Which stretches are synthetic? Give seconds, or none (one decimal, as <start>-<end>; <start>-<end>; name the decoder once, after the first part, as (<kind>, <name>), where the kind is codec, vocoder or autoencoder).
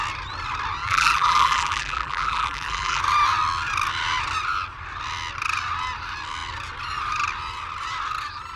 0.8-3.0 (vocoder, BigVGAN v2)